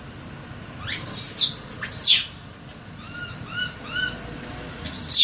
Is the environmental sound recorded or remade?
recorded